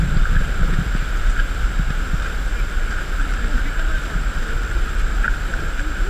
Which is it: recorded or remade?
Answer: recorded